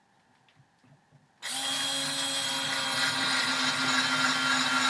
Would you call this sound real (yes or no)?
yes